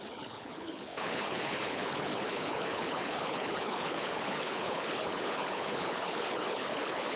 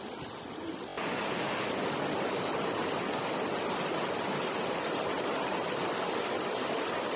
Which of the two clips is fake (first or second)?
first